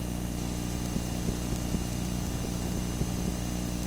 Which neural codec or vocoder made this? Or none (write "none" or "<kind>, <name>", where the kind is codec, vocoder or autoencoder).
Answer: none